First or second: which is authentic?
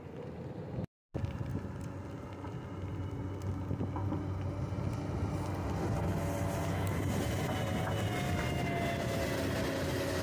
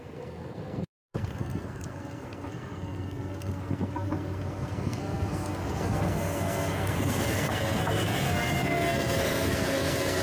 first